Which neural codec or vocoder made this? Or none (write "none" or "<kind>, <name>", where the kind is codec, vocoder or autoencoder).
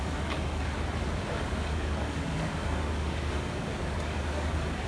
codec, DAC